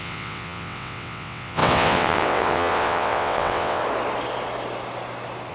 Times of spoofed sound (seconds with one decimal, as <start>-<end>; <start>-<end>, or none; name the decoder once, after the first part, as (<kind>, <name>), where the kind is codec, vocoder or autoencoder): 0.0-3.8 (vocoder, WaveNeXt)